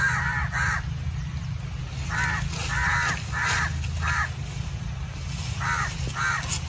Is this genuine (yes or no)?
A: yes